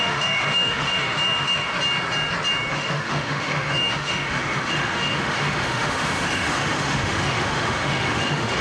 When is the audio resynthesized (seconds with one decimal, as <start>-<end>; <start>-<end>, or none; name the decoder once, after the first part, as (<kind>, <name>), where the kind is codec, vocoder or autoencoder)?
0.0-1.7 (autoencoder, DAC-VAE); 2.7-8.6